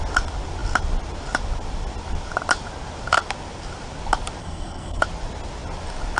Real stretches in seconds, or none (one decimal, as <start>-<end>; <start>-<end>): 0.0-4.4; 5.0-6.2